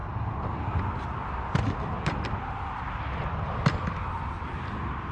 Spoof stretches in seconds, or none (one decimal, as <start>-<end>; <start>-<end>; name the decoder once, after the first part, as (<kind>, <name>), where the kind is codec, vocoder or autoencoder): none